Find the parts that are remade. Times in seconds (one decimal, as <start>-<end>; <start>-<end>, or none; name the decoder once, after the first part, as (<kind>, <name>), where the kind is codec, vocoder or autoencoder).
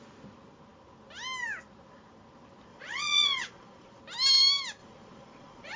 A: 2.7-4.0 (vocoder, Vocos); 4.8-5.8